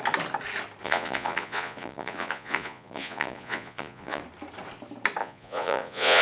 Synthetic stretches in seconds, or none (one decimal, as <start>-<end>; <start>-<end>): 0.8-4.2; 5.2-6.2